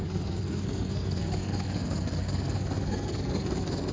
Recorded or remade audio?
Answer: remade